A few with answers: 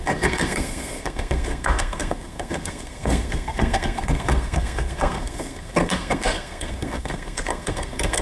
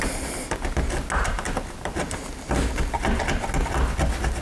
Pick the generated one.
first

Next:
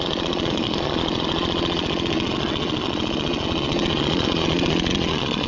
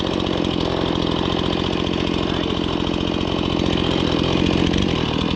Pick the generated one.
first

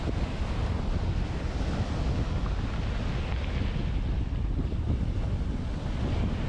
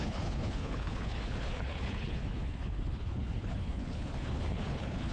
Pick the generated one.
second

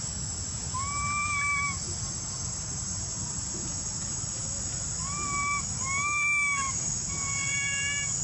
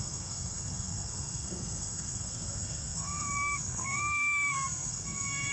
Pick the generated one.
second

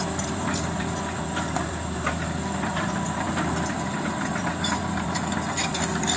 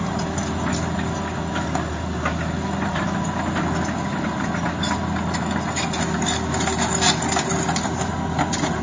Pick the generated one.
first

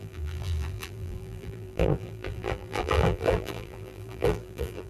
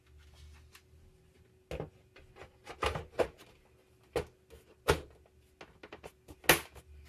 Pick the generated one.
first